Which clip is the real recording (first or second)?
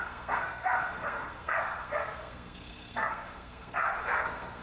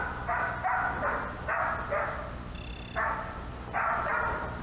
second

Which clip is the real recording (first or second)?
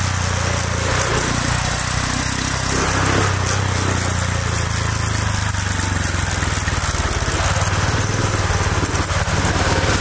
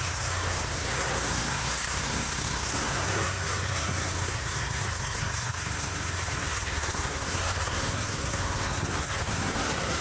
first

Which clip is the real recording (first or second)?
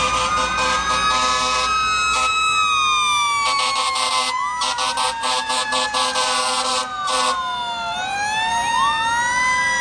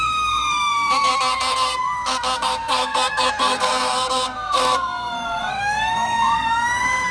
first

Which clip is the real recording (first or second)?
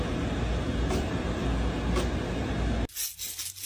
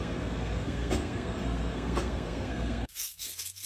first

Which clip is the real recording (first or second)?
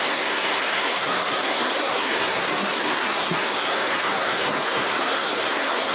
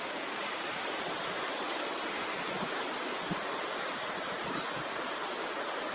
second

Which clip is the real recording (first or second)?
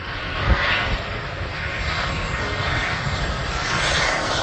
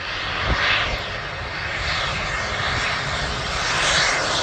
second